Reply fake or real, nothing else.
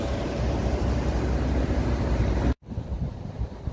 fake